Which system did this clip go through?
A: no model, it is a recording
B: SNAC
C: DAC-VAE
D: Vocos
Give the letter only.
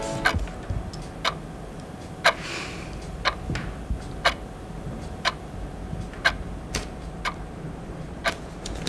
A